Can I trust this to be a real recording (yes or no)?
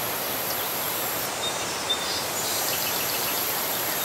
no